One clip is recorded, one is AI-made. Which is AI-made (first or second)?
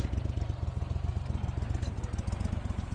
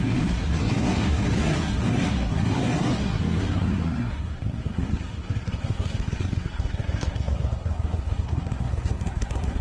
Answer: second